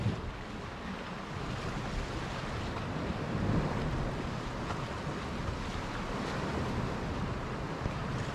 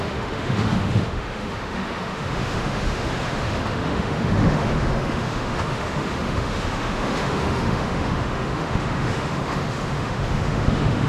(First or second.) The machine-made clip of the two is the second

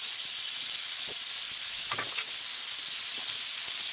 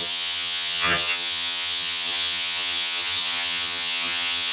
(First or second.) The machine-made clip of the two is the second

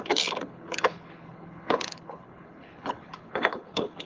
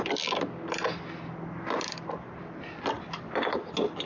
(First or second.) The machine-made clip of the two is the first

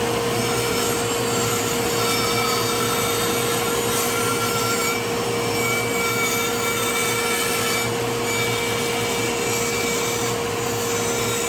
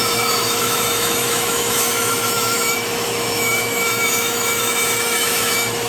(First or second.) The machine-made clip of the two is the second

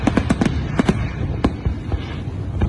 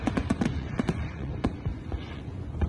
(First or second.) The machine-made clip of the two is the second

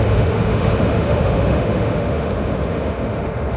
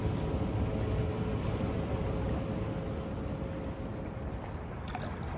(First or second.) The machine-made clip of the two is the first